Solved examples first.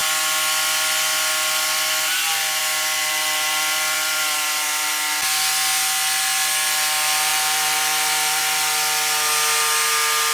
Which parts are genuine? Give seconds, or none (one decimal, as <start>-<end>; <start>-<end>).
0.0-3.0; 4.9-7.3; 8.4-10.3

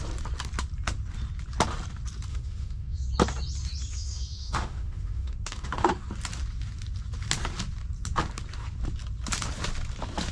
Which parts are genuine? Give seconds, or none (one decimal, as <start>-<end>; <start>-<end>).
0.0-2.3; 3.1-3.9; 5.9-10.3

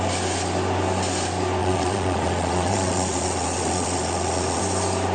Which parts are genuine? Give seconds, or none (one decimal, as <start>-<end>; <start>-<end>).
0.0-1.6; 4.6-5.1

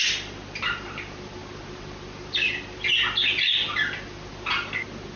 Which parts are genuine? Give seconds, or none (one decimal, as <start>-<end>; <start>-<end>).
0.0-5.2